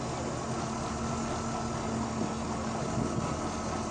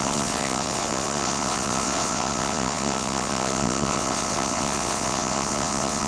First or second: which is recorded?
first